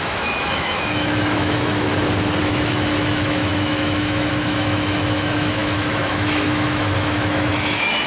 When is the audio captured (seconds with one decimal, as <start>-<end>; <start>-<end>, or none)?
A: 1.9-2.4